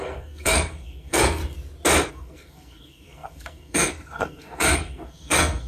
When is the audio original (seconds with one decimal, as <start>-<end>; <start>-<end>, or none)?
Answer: 1.4-2.1